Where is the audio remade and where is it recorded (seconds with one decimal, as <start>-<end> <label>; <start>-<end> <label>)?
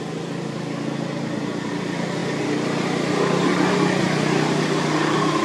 0.0-5.4 recorded